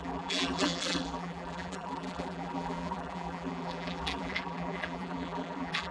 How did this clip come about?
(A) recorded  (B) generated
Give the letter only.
B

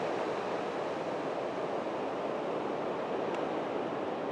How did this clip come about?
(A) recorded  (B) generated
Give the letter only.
A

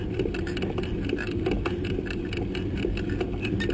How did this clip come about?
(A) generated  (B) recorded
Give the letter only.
B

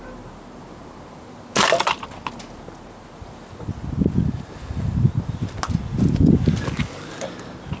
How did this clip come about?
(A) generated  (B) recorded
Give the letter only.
B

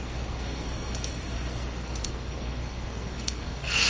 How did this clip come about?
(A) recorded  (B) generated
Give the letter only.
B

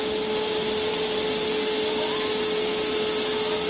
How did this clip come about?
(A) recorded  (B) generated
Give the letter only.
A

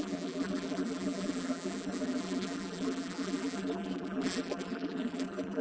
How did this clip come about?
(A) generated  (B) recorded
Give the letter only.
A